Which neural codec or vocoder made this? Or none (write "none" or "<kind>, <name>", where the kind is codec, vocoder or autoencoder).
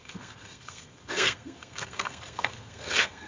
codec, SNAC